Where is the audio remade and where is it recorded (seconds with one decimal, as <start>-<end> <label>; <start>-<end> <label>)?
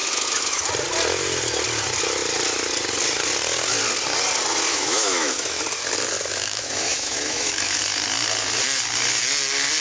0.0-0.6 remade; 0.6-4.7 recorded; 4.7-5.6 remade; 5.6-6.3 recorded; 6.3-7.8 remade; 7.8-9.8 recorded